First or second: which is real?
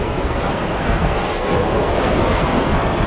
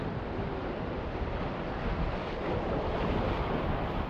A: second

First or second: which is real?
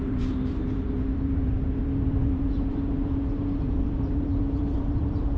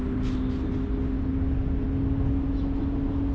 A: second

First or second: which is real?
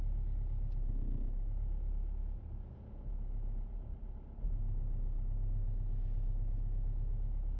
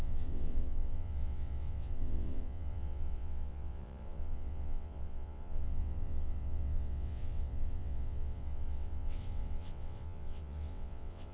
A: first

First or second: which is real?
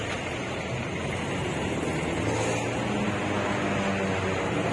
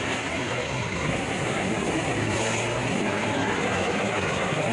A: first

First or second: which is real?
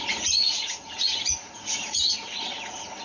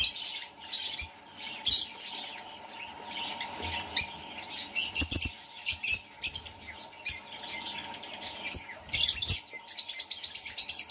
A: second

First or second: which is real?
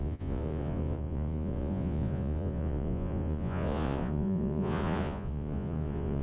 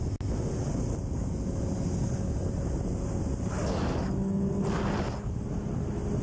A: second